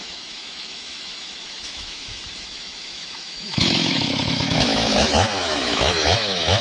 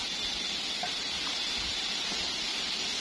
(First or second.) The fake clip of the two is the first